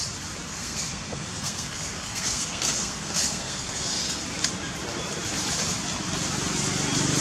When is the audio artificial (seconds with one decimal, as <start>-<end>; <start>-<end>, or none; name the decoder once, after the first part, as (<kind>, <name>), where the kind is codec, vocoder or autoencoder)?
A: 0.5-4.2 (codec, SNAC)